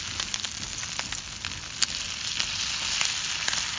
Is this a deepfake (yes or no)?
no